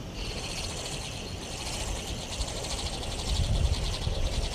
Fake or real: real